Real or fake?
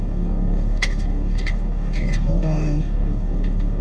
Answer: fake